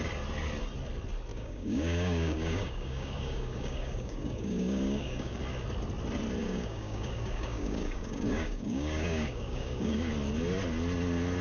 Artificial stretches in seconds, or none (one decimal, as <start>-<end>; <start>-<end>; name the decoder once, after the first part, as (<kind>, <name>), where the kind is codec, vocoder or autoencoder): 1.3-5.4 (codec, DAC); 6.4-10.1